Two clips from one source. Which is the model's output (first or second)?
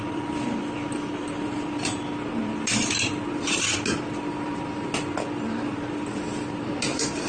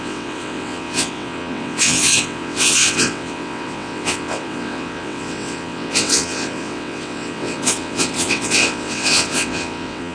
second